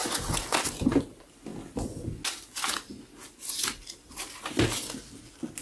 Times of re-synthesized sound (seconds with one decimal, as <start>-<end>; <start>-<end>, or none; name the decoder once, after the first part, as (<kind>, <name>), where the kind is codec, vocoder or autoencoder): none